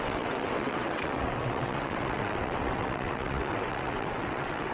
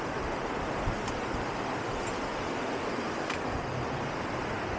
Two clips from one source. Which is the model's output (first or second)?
first